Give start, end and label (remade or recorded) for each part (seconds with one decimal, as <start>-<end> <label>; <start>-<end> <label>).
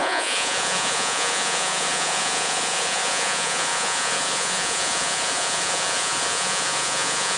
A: 0.0-7.4 remade